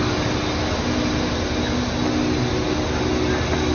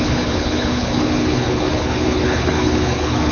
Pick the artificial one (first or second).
second